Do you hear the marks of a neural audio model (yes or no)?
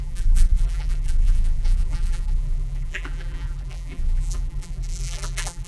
yes